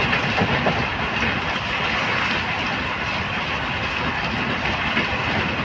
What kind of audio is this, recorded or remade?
recorded